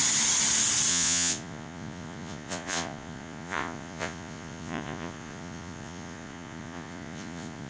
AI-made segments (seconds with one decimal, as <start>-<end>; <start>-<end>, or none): 0.9-7.7